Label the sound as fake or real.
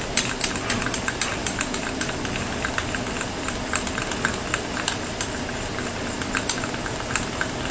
real